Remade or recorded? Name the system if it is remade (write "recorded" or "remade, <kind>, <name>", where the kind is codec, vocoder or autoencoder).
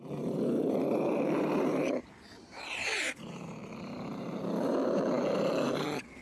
remade, vocoder, BigVGAN v2